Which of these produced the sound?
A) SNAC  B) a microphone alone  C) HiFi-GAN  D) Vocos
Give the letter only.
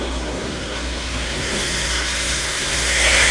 A